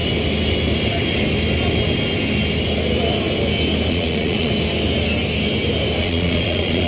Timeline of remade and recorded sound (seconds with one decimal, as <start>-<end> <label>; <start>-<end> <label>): 0.0-3.9 recorded; 3.9-4.5 remade; 4.5-6.0 recorded; 6.0-6.9 remade